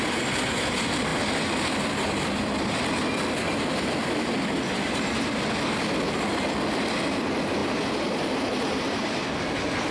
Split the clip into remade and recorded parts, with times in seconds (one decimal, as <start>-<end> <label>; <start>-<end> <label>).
0.0-1.1 recorded; 1.1-2.4 remade; 2.4-7.6 recorded; 7.6-9.2 remade; 9.2-9.9 recorded